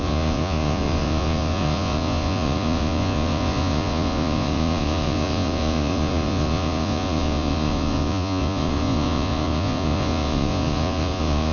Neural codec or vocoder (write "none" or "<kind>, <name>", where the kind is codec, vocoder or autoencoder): vocoder, Vocos